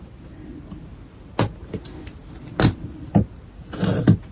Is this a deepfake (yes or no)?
no